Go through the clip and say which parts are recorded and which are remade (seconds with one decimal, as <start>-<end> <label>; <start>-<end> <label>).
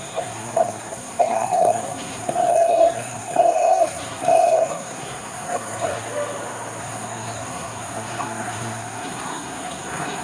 0.0-6.1 remade; 6.1-6.8 recorded; 6.8-10.2 remade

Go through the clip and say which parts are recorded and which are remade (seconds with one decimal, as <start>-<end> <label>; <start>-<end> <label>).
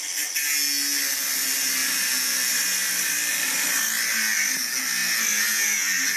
0.0-6.2 recorded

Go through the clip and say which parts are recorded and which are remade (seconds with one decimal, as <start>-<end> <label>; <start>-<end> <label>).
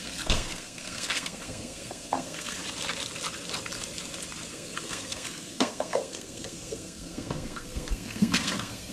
0.0-2.6 remade; 2.6-4.5 recorded; 4.5-8.9 remade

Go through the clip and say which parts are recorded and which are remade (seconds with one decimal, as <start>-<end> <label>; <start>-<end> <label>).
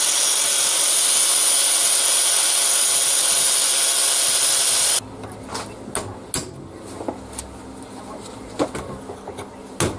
0.0-10.0 recorded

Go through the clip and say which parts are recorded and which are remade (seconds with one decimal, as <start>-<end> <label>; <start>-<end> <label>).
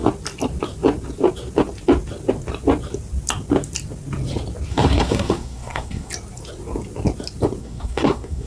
0.0-4.7 recorded; 4.7-6.1 remade; 6.1-7.6 recorded; 7.6-8.5 remade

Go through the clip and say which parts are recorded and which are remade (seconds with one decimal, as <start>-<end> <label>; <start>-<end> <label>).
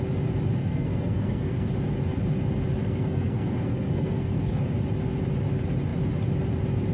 0.0-0.6 recorded; 0.6-1.7 remade; 1.7-2.8 recorded; 2.8-4.6 remade; 4.6-6.9 recorded